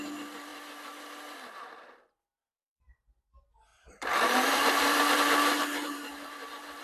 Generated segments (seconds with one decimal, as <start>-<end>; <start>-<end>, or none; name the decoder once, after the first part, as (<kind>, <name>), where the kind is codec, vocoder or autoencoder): 3.7-6.8 (vocoder, BigVGAN v2)